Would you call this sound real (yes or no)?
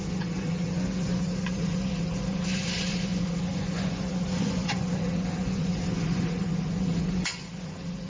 no